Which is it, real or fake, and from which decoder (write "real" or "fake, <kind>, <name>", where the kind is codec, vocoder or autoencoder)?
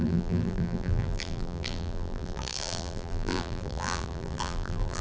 fake, vocoder, BigVGAN v2